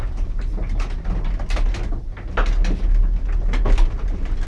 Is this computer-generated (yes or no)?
no